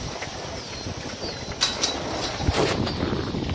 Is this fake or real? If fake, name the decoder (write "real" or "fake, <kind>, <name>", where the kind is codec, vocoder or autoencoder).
real